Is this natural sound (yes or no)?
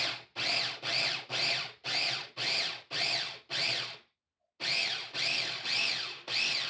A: yes